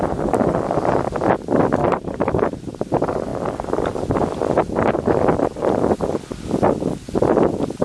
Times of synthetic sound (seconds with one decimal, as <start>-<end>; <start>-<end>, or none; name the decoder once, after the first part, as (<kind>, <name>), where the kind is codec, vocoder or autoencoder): 1.8-2.6 (vocoder, BigVGAN v2)

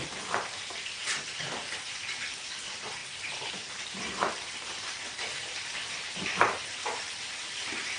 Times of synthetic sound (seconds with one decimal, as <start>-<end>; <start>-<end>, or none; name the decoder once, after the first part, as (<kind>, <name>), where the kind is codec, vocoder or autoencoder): 1.0-1.6 (vocoder, BigVGAN v2); 3.0-8.0

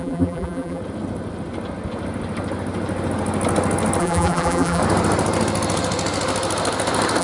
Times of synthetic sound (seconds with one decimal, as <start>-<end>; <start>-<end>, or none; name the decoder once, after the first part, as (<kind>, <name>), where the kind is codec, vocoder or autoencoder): 0.0-0.8 (vocoder, BigVGAN v2); 4.0-4.8

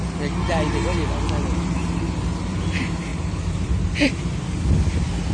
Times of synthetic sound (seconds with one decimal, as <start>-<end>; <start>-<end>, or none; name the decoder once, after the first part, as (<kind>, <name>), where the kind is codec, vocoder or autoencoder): 3.1-4.4 (vocoder, BigVGAN v2)

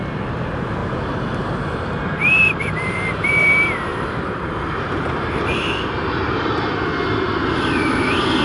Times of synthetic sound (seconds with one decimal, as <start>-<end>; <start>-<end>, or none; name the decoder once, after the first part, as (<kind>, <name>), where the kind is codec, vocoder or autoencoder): 0.8-2.9 (vocoder, BigVGAN v2); 3.9-6.5